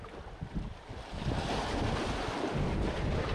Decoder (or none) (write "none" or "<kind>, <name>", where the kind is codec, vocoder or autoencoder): none